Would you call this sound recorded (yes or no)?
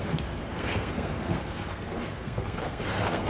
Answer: no